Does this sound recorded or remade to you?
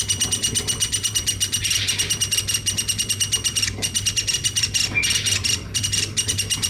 remade